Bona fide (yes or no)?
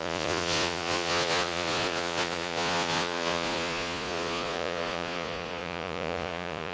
no